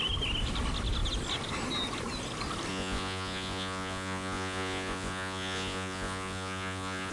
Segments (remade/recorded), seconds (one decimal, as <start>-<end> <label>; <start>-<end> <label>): 0.0-2.7 recorded; 2.7-7.1 remade